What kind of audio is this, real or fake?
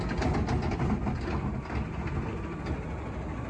real